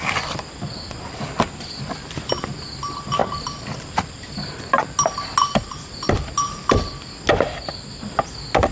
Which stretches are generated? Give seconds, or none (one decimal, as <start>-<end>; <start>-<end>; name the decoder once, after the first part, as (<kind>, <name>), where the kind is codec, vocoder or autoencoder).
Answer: none